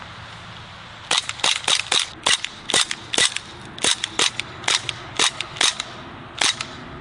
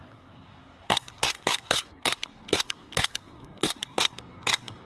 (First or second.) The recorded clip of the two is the first